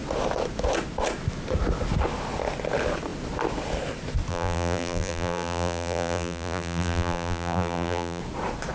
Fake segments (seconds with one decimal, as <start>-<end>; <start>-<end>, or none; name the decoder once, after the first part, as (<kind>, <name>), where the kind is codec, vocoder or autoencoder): 4.3-8.2 (vocoder, BigVGAN v2)